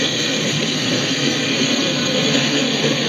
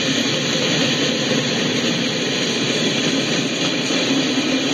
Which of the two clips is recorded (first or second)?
second